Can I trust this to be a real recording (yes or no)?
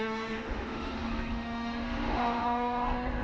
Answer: no